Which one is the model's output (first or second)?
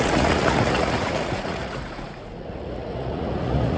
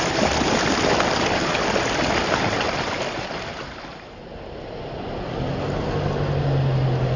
first